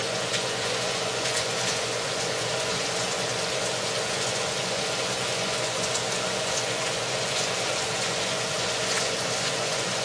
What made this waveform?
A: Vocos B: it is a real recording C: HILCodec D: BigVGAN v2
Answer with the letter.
A